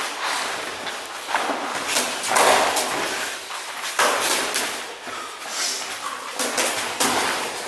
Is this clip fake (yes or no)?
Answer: no